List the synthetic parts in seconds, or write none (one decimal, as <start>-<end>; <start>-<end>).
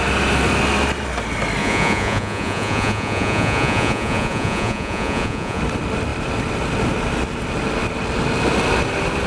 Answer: 1.6-5.6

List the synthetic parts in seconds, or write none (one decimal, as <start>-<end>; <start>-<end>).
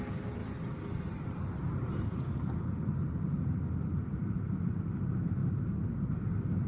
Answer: none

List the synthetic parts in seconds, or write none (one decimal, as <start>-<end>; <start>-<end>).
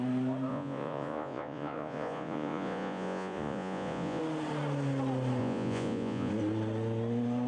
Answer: 0.5-4.2; 5.4-6.3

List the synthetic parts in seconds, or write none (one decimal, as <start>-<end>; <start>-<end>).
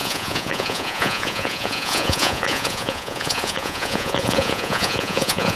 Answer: 0.0-5.6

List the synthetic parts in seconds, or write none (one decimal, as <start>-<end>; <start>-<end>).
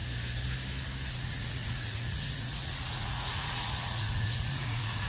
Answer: 1.1-5.1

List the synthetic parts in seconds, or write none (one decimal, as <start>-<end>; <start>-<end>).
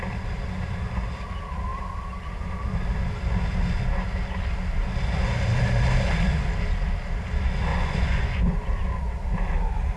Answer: 7.7-8.4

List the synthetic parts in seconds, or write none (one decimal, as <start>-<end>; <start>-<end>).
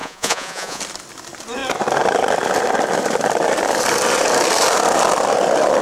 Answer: 0.0-0.8